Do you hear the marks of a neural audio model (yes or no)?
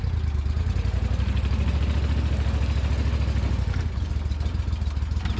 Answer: no